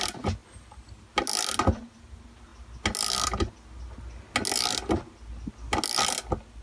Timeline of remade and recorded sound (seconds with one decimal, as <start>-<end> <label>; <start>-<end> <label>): 0.0-6.6 recorded